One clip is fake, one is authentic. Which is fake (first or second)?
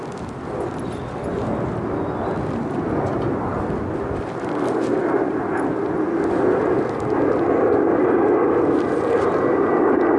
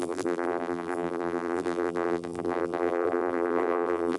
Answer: second